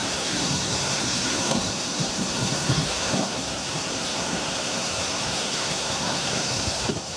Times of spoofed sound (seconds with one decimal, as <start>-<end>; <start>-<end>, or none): 0.0-7.2